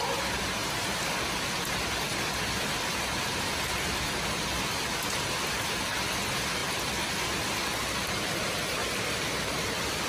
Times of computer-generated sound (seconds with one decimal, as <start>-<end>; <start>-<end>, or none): none